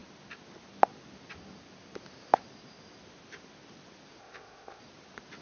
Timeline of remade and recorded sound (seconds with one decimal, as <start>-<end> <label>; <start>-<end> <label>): 0.0-4.2 recorded; 4.2-4.8 remade; 4.8-5.4 recorded

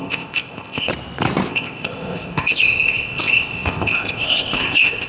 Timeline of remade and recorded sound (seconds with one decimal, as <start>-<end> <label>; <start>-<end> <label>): 0.0-0.9 remade; 0.9-1.5 recorded; 1.5-5.1 remade